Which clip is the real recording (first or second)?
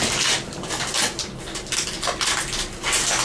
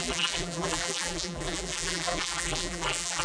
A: first